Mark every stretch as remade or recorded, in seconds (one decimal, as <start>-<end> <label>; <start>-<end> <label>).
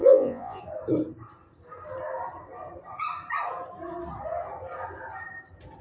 0.0-0.6 remade; 0.6-5.8 recorded